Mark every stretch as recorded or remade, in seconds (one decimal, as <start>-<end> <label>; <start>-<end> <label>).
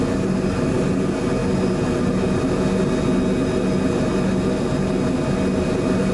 0.0-6.1 recorded